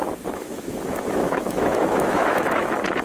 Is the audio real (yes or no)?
no